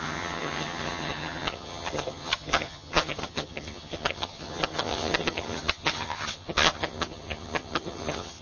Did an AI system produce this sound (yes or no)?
yes